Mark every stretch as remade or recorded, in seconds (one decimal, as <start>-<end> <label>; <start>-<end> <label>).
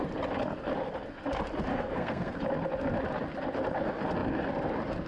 0.0-1.7 recorded; 1.7-2.4 remade; 2.4-5.1 recorded